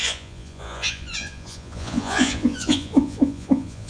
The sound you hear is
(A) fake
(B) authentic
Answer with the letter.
A